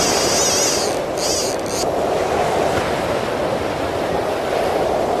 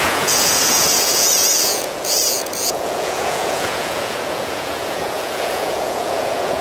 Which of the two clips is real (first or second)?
first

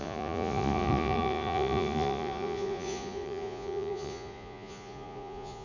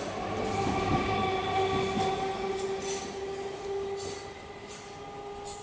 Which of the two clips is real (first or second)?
second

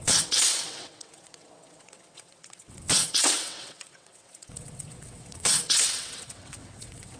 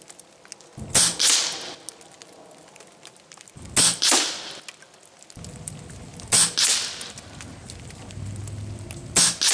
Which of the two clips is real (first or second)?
second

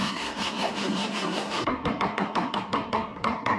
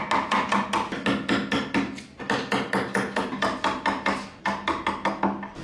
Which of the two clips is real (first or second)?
second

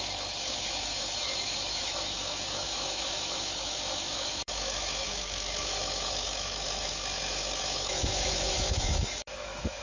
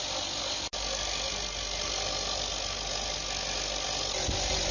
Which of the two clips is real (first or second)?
second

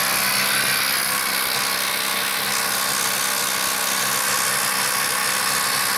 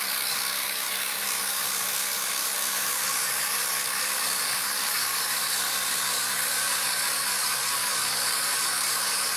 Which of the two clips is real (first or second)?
first